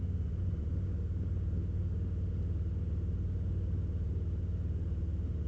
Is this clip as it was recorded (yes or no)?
no